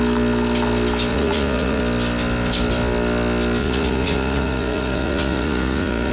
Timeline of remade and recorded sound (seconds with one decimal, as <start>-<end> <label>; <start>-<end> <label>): 0.0-1.1 recorded; 1.1-1.8 remade; 1.8-3.6 recorded; 3.6-6.1 remade